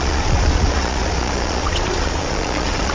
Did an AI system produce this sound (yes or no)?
yes